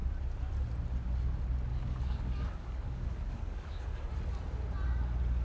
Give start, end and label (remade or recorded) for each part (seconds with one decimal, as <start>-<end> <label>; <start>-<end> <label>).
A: 0.0-1.7 recorded; 1.7-4.1 remade; 4.1-5.4 recorded